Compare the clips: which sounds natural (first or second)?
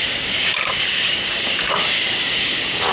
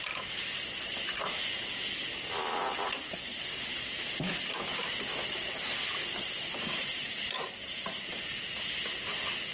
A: second